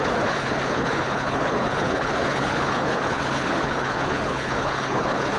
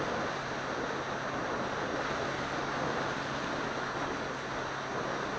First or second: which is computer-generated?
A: first